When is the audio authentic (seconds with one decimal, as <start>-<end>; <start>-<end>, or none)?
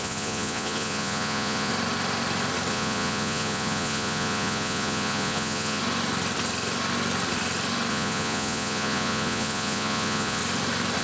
1.7-2.7; 5.8-7.9; 10.4-11.0